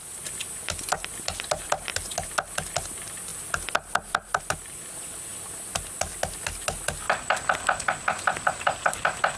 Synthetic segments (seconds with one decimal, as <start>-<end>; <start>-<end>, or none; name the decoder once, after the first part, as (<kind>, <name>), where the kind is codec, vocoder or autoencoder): none